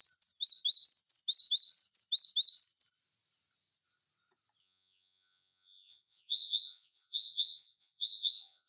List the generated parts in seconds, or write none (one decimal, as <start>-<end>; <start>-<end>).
4.6-8.7